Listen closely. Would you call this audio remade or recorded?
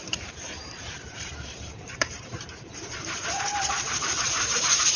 remade